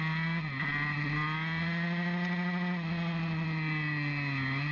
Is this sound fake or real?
real